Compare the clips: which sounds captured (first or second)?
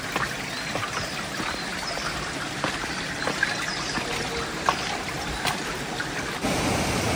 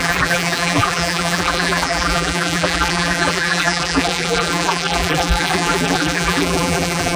first